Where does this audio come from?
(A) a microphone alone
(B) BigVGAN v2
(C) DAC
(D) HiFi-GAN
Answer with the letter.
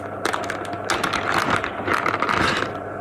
A